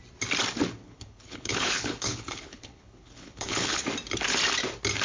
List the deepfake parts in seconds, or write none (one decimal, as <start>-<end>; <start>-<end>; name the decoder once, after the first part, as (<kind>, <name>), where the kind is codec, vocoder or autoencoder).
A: 0.8-3.8 (codec, HILCodec)